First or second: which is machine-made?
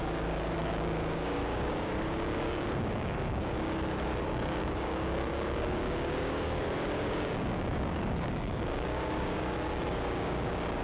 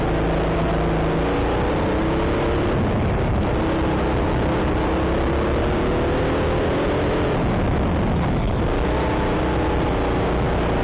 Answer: first